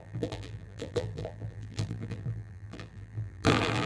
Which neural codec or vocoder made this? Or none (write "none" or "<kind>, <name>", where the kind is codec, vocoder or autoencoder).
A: vocoder, BigVGAN v2